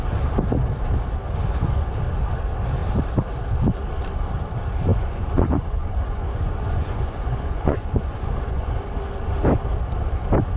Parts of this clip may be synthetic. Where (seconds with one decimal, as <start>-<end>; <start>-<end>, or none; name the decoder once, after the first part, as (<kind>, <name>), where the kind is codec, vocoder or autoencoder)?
4.9-8.8 (vocoder, Vocos)